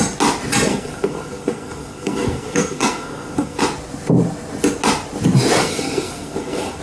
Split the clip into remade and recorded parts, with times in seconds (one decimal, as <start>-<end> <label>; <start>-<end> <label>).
0.0-0.7 recorded; 0.7-3.6 remade; 3.6-5.6 recorded; 5.6-6.8 remade